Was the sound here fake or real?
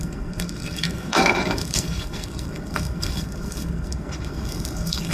fake